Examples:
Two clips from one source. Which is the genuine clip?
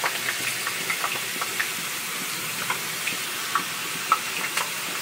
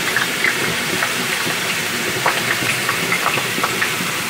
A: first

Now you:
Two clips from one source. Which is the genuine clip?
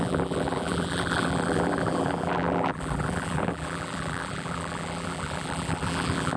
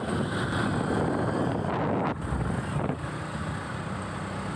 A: second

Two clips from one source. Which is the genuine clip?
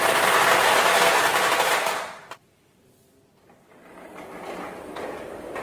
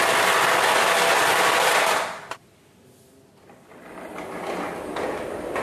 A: second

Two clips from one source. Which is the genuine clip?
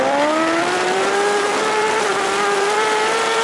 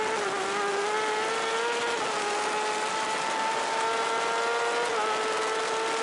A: second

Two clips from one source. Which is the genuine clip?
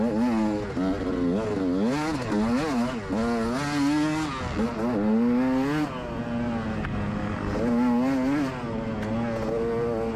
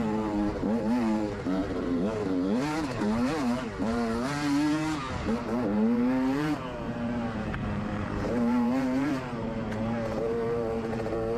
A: first